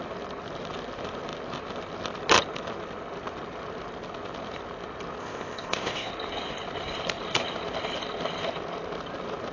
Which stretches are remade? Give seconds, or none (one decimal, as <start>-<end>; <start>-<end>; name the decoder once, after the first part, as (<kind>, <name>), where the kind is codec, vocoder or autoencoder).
5.2-6.1 (codec, ZipCodec)